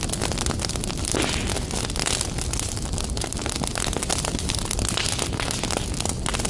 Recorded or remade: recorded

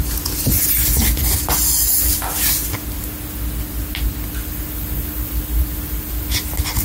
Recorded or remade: recorded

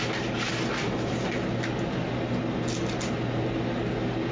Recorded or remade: recorded